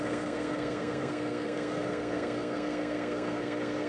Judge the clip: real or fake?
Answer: fake